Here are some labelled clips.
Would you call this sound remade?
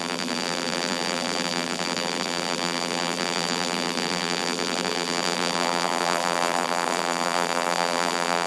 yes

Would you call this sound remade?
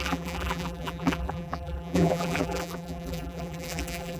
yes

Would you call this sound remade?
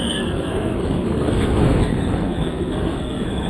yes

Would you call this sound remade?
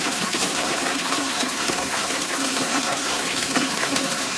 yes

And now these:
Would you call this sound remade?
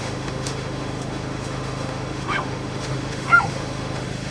yes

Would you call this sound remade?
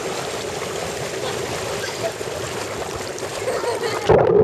no